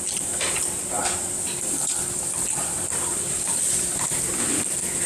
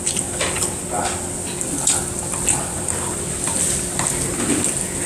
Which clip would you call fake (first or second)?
first